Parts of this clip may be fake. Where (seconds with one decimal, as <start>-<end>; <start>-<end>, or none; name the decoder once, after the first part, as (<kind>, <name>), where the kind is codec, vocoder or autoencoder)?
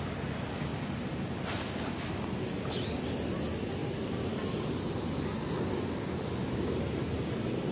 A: none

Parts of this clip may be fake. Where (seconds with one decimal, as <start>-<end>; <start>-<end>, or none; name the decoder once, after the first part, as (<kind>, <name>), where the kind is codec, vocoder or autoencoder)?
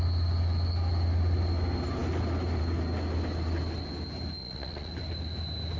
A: 4.4-4.9 (vocoder, Vocos)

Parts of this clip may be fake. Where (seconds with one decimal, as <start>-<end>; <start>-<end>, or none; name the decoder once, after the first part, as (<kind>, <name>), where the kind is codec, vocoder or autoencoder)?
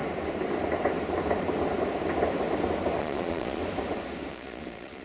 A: 3.0-3.6 (vocoder, Vocos); 4.3-5.0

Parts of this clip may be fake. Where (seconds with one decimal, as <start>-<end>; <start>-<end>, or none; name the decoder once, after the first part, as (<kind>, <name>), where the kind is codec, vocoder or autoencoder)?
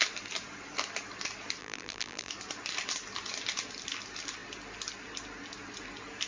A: 1.6-2.3 (vocoder, BigVGAN v2)